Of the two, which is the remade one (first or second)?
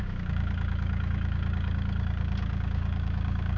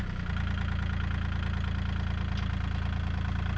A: first